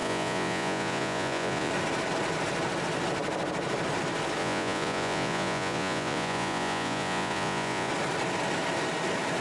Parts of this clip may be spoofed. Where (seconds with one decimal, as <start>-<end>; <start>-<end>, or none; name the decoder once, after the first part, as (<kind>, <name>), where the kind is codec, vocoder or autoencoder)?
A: 0.0-1.7 (vocoder, Vocos); 4.4-7.9